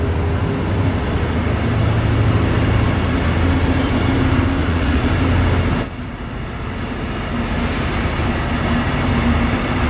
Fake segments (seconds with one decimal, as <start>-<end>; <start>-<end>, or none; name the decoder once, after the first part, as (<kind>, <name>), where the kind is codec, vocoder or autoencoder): 4.6-5.1 (vocoder, Vocos)